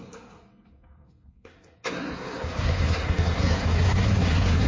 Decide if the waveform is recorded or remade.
remade